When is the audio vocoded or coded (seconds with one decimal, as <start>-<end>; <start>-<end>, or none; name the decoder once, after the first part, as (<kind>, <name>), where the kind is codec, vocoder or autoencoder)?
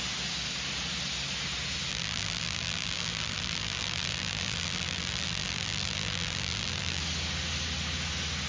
1.9-7.0 (vocoder, BigVGAN v2)